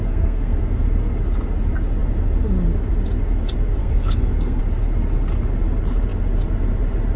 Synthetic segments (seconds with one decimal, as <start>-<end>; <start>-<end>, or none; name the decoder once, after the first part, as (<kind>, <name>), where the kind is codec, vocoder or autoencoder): 0.0-0.6 (codec, SNAC); 3.8-4.6